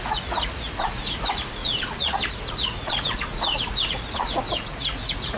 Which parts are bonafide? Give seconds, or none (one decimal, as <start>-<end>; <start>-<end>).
none